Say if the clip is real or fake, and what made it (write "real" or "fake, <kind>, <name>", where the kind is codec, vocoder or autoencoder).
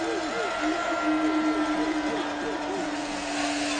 real